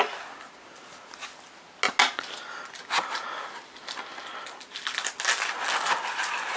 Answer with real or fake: real